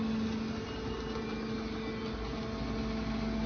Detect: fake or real real